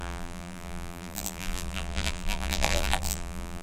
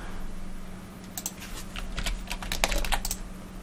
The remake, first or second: first